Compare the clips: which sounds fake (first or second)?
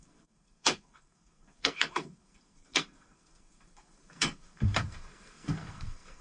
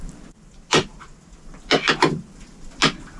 first